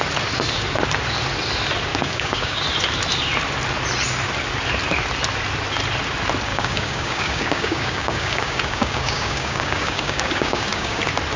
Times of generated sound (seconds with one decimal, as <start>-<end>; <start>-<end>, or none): 1.9-2.6; 6.5-11.0